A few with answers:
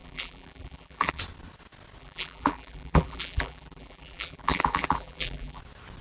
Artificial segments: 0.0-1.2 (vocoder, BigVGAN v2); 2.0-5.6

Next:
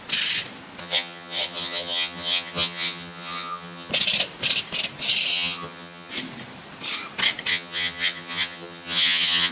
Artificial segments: 0.8-3.9 (vocoder, HiFi-GAN); 5.3-6.1; 7.5-9.5

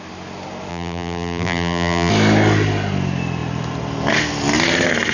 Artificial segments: 0.7-2.1 (vocoder, BigVGAN v2)

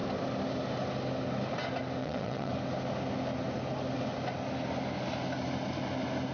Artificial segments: 2.0-2.5 (vocoder, WaveNeXt)

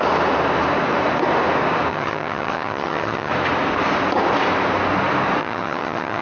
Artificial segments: 1.9-3.3 (vocoder, HiFi-GAN); 5.4-6.2

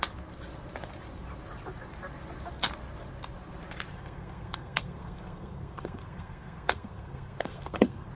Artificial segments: 3.9-8.1 (codec, SNAC)